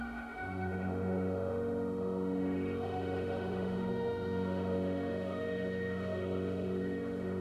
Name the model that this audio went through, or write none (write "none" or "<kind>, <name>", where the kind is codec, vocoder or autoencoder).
autoencoder, DAC-VAE